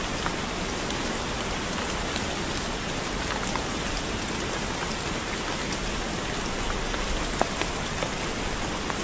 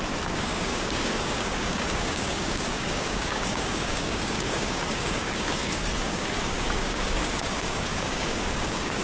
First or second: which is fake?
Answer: second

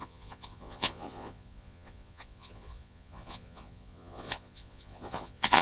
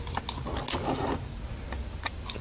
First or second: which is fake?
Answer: first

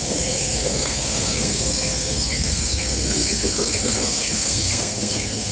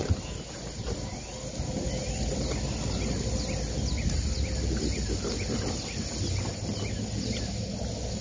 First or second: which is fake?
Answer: first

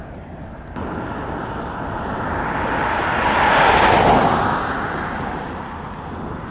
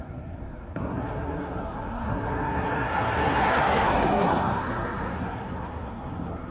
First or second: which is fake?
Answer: second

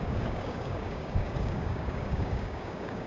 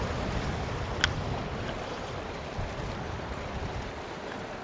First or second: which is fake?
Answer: first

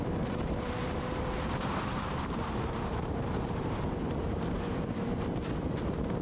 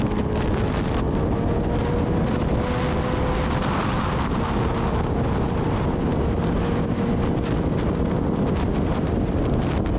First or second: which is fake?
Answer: first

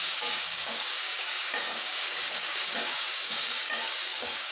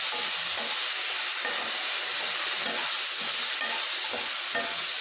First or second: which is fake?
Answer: first